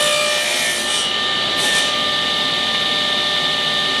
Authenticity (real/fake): fake